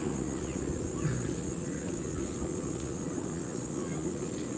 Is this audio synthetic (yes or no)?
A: yes